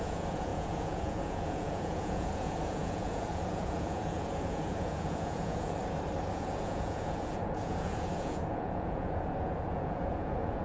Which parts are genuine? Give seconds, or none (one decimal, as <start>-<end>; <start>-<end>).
5.8-6.3